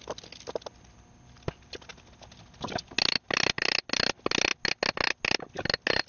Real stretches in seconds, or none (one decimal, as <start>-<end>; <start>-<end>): 0.0-6.1